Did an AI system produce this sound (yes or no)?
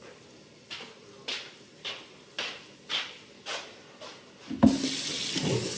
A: no